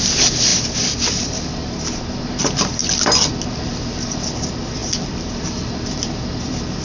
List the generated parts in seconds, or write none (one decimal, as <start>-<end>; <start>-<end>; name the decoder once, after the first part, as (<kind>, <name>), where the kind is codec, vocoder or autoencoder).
none